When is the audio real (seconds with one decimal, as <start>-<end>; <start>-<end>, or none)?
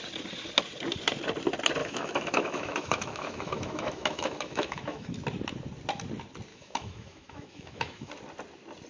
0.0-1.8; 5.1-6.5; 8.1-8.9